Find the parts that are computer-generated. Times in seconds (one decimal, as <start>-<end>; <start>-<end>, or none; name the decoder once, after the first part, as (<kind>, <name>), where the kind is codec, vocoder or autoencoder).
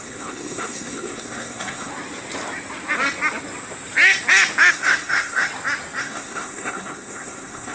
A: 0.0-1.9 (codec, SNAC); 4.7-5.5; 6.0-7.7